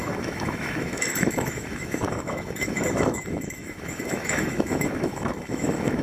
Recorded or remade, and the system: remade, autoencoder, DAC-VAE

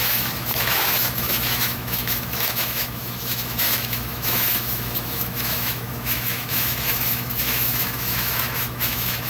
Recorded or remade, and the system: remade, autoencoder, DAC-VAE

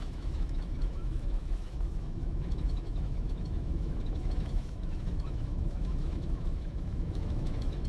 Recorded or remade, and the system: remade, autoencoder, DAC-VAE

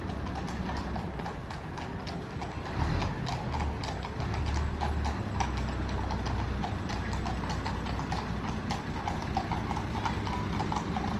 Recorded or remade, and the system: recorded